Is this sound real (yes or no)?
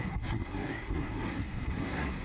no